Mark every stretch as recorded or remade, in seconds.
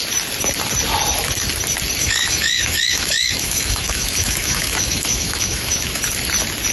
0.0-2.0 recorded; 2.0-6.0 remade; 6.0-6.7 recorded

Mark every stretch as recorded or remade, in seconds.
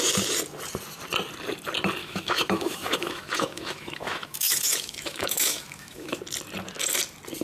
0.0-2.0 recorded; 2.0-6.2 remade; 6.2-7.4 recorded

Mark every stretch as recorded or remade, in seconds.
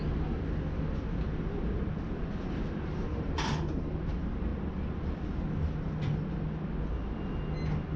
0.0-8.0 recorded